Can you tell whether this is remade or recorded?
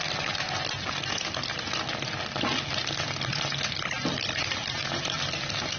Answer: recorded